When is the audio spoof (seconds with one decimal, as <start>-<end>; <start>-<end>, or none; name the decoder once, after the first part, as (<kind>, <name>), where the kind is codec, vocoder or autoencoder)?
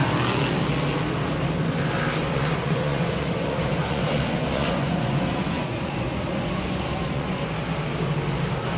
2.2-7.4 (vocoder, Vocos)